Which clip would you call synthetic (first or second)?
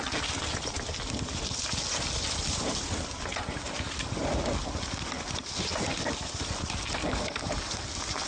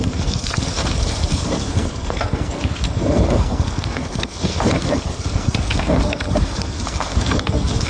second